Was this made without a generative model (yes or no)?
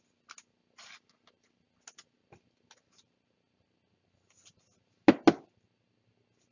yes